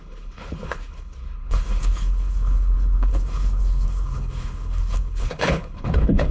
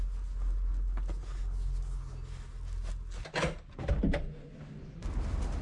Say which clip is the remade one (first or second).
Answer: first